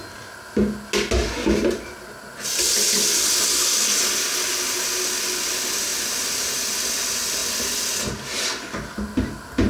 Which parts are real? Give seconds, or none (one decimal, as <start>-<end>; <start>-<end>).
0.0-5.9; 6.5-9.7